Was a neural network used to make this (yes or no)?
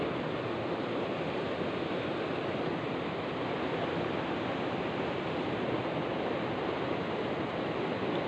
no